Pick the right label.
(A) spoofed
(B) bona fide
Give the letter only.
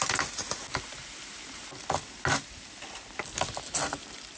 B